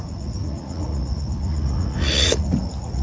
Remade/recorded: remade